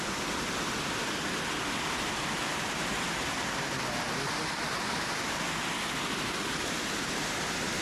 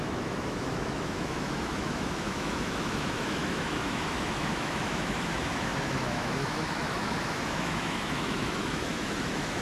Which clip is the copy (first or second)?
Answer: second